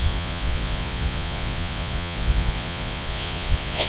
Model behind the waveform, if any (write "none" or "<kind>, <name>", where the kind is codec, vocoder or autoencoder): vocoder, Vocos